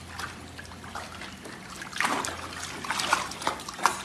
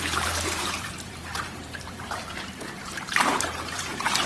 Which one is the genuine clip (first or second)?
first